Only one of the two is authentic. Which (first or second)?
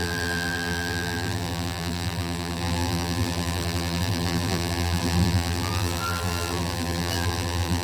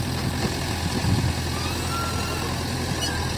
second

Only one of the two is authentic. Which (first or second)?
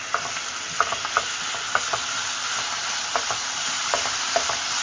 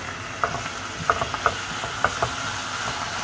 second